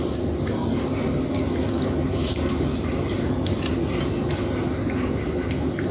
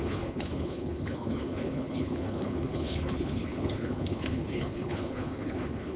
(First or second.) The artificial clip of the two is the second